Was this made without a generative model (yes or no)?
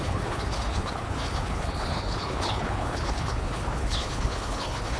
no